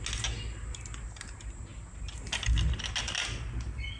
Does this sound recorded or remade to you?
recorded